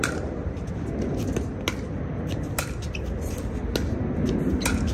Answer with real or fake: real